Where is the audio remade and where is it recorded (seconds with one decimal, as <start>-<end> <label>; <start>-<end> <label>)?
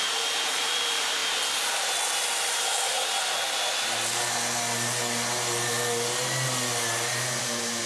0.0-1.2 remade; 1.2-2.6 recorded; 2.6-3.0 remade; 3.0-7.4 recorded; 7.4-7.9 remade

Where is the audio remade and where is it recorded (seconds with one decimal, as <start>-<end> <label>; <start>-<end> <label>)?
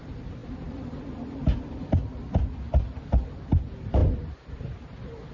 0.0-4.0 recorded; 4.0-4.6 remade; 4.6-5.3 recorded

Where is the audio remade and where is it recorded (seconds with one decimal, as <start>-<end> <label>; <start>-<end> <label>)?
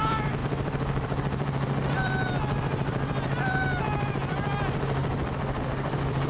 0.0-6.3 remade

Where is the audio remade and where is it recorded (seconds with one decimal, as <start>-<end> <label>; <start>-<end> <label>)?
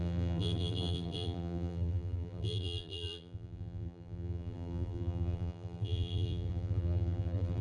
0.0-7.6 remade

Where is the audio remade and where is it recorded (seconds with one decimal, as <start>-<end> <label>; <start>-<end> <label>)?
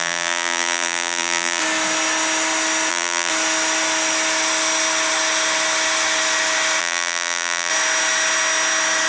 0.0-1.6 remade; 1.6-2.9 recorded; 2.9-3.3 remade; 3.3-6.8 recorded; 6.8-7.7 remade; 7.7-9.1 recorded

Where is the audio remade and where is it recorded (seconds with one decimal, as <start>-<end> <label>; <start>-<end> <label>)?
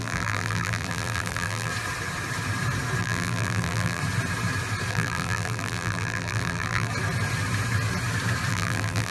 0.0-1.7 remade; 1.7-3.0 recorded; 3.0-4.0 remade; 4.0-4.9 recorded; 4.9-6.9 remade; 6.9-8.5 recorded; 8.5-9.1 remade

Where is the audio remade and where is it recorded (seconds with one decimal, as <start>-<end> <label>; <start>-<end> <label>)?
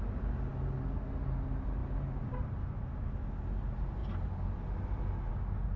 0.0-1.8 recorded; 1.8-3.1 remade; 3.1-5.8 recorded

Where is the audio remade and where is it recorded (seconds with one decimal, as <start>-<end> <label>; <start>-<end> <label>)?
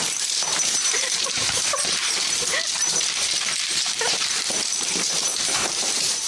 0.0-0.5 recorded; 0.5-4.3 remade; 4.3-5.3 recorded; 5.3-6.3 remade